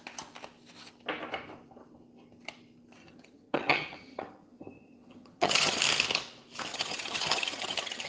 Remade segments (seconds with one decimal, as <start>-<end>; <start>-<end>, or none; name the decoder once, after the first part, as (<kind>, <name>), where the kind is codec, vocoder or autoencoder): 3.0-5.8 (vocoder, HiFi-GAN); 6.7-8.1